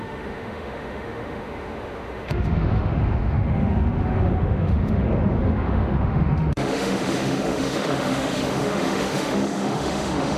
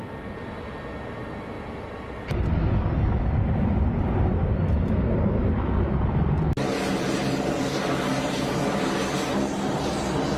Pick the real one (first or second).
second